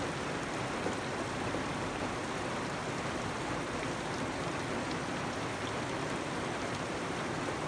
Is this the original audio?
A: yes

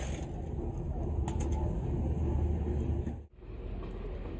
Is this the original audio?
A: yes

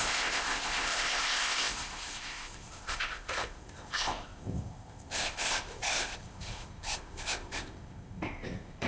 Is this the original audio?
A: no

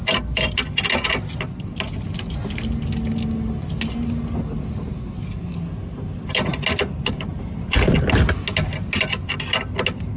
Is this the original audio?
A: yes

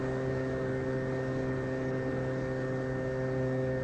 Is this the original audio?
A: no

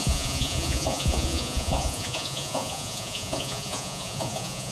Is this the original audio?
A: no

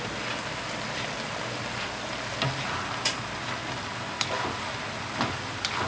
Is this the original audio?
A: yes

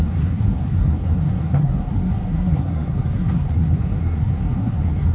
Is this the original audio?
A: no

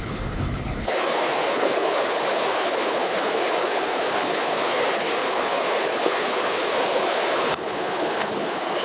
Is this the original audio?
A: no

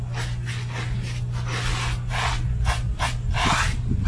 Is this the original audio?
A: yes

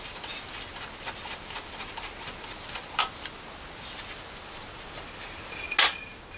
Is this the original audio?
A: yes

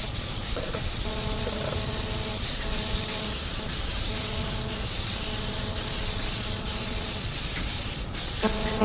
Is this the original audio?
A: no